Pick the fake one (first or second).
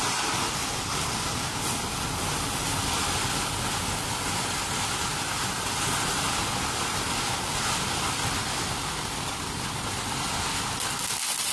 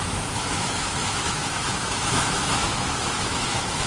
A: second